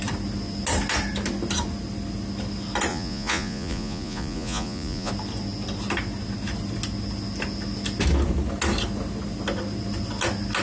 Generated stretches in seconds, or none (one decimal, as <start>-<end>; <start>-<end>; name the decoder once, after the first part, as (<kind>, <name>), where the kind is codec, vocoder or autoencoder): 2.9-5.1 (vocoder, Vocos)

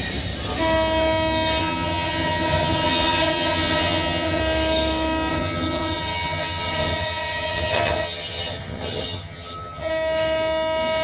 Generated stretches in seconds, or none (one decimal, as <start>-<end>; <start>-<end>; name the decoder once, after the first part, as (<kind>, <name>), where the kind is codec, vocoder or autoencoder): 1.6-4.4 (vocoder, HiFi-GAN); 5.3-9.9